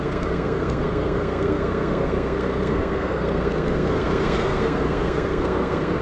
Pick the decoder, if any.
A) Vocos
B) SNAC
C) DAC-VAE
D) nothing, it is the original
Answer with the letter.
B